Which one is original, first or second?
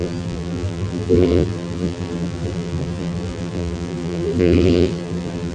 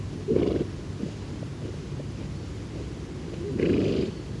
second